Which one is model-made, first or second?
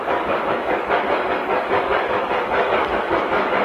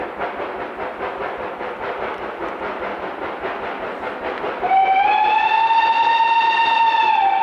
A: first